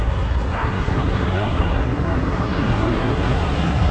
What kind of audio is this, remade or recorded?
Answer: remade